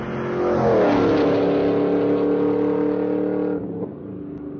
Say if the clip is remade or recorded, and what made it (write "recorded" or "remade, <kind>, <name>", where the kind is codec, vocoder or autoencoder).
recorded